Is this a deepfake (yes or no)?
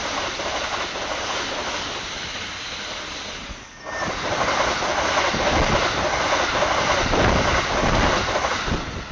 no